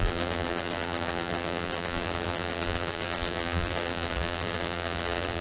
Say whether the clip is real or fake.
fake